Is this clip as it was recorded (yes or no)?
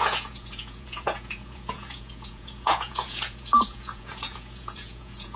no